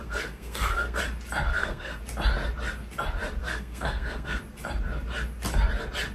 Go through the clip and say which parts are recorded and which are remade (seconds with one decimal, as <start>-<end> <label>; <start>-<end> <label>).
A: 0.0-1.0 remade; 1.0-1.5 recorded; 1.5-2.0 remade; 2.0-3.4 recorded; 3.4-4.4 remade; 4.4-6.1 recorded